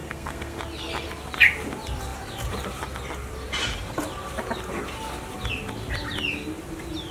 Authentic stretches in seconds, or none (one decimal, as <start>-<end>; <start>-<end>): 0.6-7.1